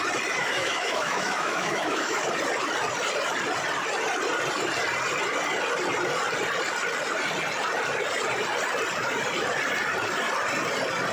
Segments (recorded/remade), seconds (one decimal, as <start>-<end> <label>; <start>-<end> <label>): 0.0-0.4 recorded; 0.4-2.2 remade; 2.2-11.1 recorded